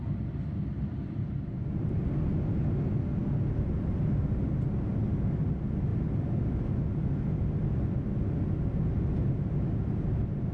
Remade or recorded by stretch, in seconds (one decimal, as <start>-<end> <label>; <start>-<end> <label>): 0.0-10.5 recorded